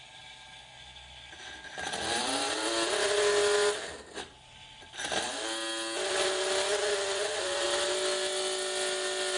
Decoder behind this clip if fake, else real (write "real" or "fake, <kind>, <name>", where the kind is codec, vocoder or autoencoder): real